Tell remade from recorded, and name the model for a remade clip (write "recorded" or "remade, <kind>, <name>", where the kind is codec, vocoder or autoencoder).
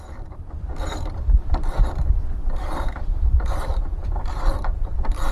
remade, vocoder, BigVGAN v2